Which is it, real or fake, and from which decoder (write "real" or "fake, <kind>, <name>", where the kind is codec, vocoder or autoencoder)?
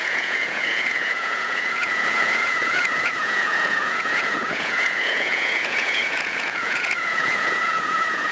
fake, vocoder, Vocos